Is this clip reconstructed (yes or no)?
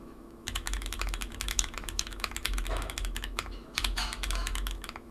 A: yes